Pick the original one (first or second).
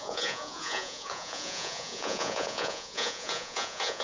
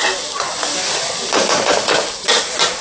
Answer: second